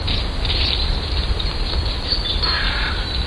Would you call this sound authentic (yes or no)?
yes